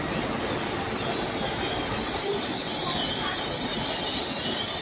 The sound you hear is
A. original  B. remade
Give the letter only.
A